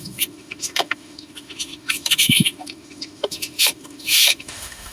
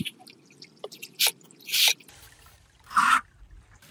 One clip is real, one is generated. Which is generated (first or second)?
first